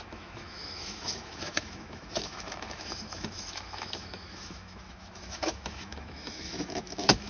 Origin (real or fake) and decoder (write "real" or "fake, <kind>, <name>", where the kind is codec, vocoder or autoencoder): fake, autoencoder, DAC-VAE